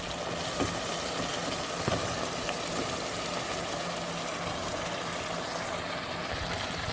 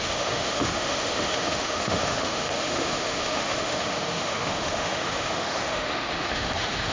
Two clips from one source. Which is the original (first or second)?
first